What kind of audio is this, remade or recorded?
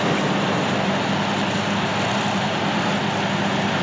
recorded